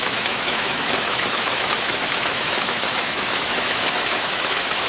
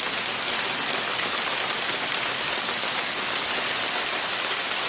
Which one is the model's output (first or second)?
first